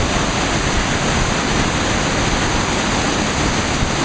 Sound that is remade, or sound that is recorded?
recorded